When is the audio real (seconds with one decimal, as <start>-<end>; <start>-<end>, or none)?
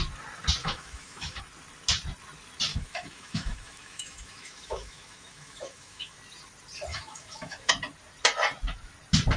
0.0-0.6; 1.4-2.7; 6.2-6.9; 7.7-9.4